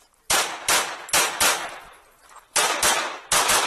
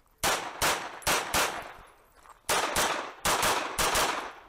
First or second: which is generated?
first